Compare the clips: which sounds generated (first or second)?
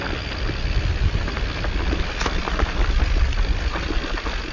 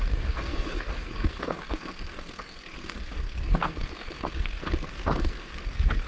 second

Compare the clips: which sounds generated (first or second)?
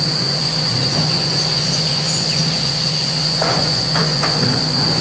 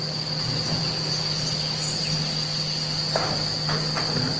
first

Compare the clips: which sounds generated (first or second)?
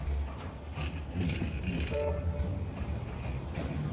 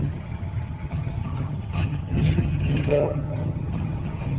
second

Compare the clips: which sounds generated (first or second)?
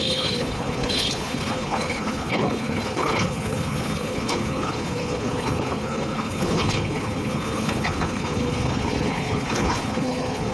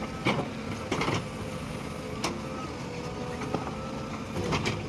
first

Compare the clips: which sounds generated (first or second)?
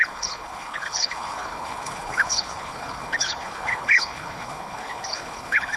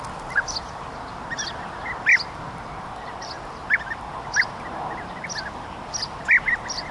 first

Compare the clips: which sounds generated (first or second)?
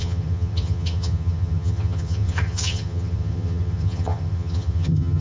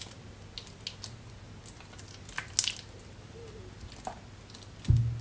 first